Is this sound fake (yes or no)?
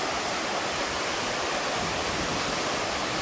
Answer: no